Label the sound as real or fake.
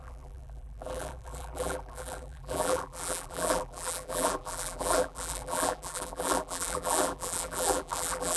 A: fake